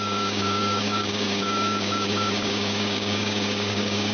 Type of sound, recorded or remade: remade